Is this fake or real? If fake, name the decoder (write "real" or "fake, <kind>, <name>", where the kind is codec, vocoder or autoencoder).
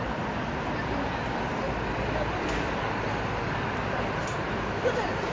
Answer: fake, vocoder, BigVGAN v2